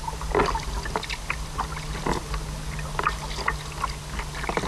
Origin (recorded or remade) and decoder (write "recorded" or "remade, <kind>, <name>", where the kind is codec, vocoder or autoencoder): recorded